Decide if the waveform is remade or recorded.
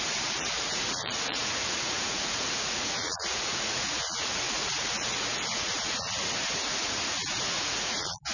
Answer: remade